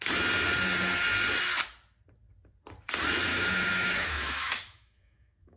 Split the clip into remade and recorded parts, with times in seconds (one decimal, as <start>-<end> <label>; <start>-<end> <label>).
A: 0.0-3.3 recorded; 3.3-5.6 remade